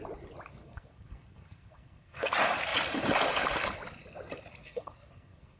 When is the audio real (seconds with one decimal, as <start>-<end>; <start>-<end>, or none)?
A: 0.0-0.6; 2.3-4.6